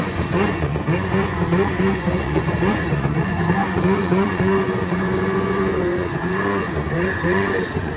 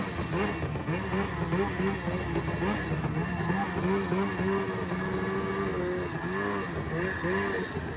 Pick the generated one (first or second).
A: first